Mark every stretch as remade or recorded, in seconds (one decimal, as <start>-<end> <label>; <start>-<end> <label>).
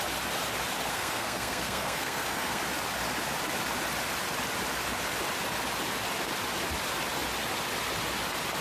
0.0-0.9 recorded; 0.9-2.6 remade; 2.6-8.6 recorded